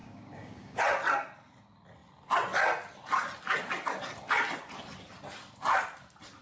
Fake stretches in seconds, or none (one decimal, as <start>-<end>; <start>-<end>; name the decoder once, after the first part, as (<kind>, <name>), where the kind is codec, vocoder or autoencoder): 0.0-0.8 (codec, DAC)